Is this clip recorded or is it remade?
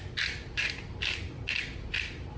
recorded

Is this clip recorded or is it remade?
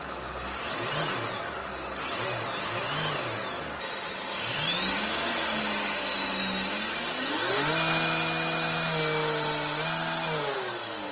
recorded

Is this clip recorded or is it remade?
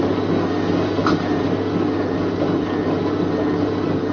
recorded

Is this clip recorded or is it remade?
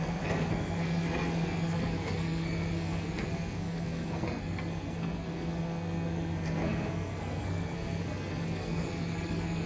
remade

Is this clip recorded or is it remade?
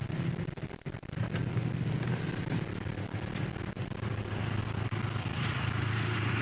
recorded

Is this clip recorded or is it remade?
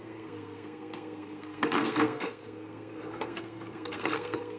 remade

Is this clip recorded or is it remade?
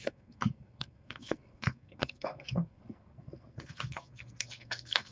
remade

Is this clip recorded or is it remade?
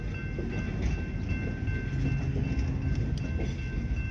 recorded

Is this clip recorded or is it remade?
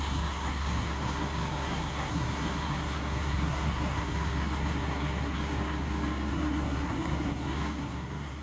remade